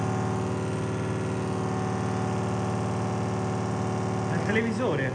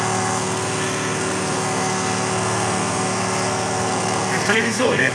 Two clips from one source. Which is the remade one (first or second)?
second